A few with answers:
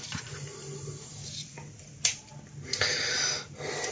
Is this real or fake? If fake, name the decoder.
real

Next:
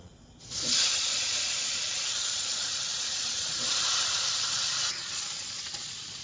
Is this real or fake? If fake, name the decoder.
fake, vocoder, Vocos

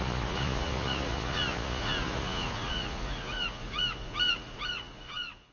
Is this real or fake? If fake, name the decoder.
fake, vocoder, Vocos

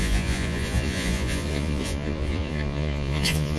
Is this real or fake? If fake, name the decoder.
fake, vocoder, Vocos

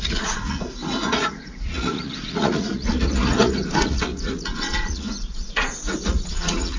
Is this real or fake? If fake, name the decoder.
fake, vocoder, Vocos